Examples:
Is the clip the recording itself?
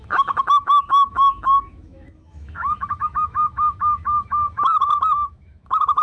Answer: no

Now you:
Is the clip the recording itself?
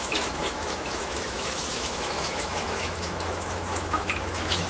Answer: no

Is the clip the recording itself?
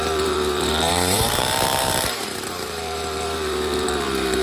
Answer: no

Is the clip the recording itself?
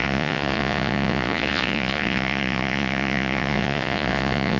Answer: no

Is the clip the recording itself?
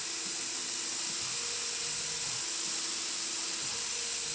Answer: yes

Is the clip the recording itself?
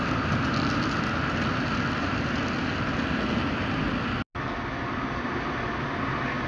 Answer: yes